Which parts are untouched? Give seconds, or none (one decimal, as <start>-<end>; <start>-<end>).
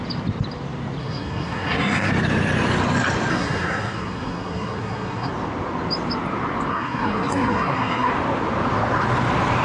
0.0-1.0; 2.1-3.3; 5.3-6.7; 8.1-9.6